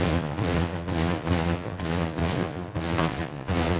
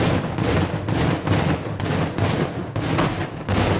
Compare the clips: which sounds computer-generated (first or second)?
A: first